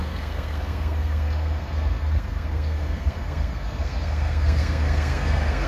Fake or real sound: fake